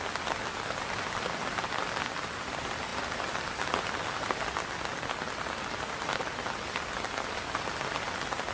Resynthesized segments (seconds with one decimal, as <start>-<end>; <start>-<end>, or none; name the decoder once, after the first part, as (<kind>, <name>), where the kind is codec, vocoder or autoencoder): none